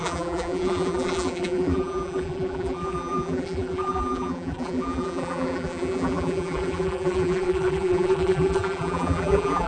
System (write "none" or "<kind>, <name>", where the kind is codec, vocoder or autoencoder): vocoder, BigVGAN v2